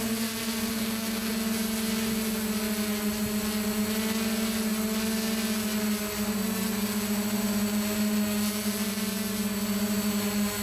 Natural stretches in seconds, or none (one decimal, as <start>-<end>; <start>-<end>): 0.0-0.7; 1.3-10.6